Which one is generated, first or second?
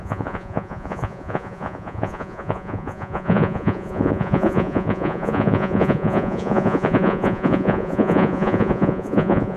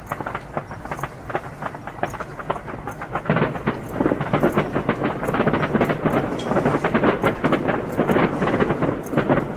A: first